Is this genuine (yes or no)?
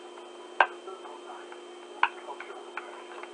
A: yes